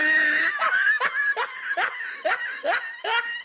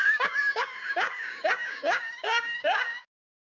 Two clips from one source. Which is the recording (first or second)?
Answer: first